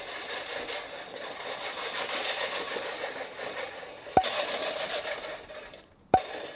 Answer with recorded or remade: recorded